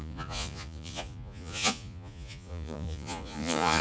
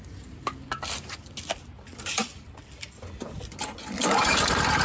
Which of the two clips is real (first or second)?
second